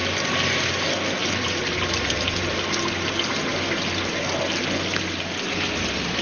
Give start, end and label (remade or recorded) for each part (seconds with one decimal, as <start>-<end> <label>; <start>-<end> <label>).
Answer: 0.0-1.2 recorded; 1.2-2.2 remade; 2.2-6.2 recorded